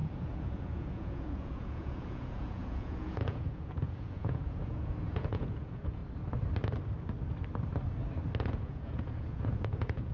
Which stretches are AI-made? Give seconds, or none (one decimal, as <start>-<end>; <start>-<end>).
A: 0.0-6.0; 8.4-10.1